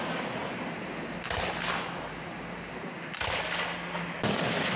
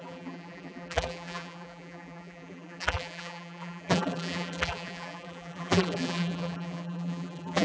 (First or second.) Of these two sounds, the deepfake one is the second